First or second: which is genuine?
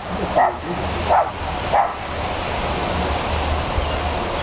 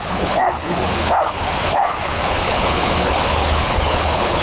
first